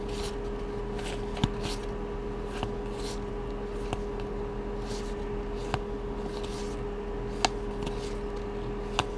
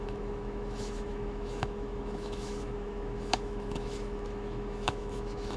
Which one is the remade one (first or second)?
second